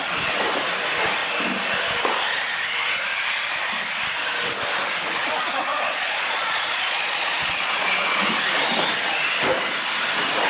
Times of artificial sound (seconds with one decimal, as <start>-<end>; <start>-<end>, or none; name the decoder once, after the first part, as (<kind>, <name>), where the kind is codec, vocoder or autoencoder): 5.7-8.3 (vocoder, Vocos)